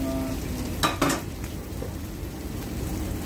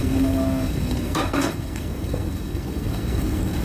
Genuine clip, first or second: first